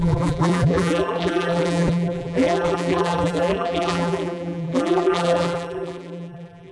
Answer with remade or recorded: remade